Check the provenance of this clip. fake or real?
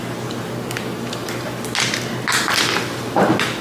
real